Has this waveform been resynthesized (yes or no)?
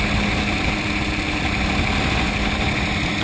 no